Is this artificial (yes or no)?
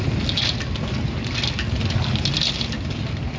no